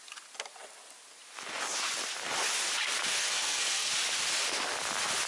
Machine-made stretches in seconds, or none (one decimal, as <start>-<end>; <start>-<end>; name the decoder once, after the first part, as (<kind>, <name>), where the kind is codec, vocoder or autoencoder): 3.2-3.9 (codec, SNAC)